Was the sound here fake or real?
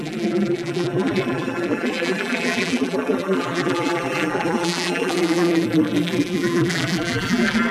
fake